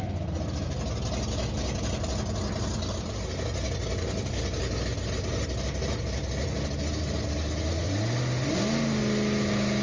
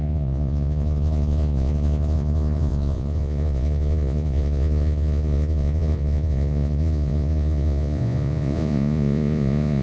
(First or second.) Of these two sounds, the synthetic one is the second